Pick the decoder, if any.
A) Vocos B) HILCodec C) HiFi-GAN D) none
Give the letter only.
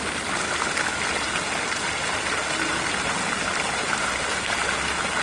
D